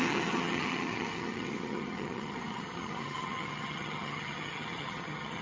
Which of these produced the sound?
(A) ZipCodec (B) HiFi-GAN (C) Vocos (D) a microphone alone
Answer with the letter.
B